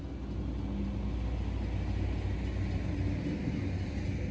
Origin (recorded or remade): recorded